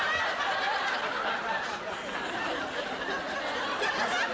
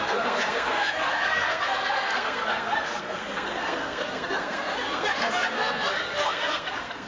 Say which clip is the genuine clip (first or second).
first